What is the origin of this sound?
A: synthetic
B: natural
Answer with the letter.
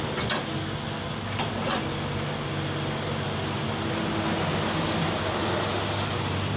B